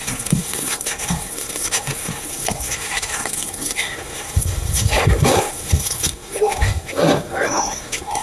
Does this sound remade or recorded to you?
remade